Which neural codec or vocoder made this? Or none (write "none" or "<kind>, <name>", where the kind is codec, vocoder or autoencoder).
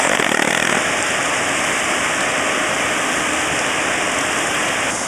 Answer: none